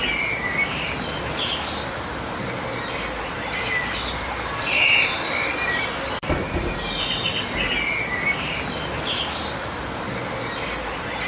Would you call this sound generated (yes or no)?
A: no